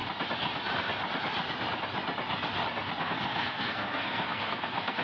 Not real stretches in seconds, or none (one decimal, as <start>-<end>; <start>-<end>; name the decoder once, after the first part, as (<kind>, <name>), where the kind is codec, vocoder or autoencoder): 3.0-5.0 (codec, SNAC)